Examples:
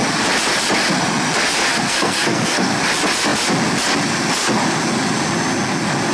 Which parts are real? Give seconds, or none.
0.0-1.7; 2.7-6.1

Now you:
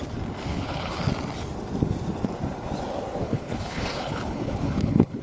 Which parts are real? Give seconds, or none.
0.0-0.5; 1.0-3.2

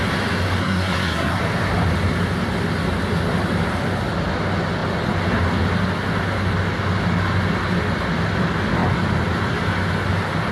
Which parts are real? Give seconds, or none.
0.0-0.6; 1.4-10.5

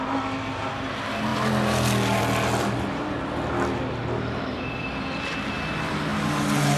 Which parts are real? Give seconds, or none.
0.0-6.8

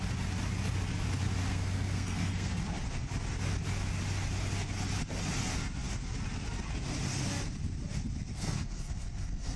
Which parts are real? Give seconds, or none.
0.0-1.5; 2.6-8.3

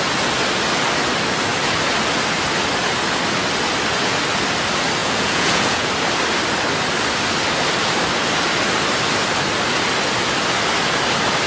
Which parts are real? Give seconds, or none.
0.0-5.0; 5.9-11.5

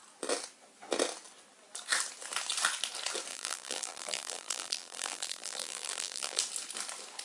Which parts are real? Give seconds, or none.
0.0-3.3; 6.4-7.2